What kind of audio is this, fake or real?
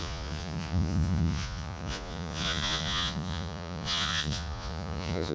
fake